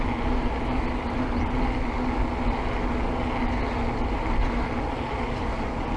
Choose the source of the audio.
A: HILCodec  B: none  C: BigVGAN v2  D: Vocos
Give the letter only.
B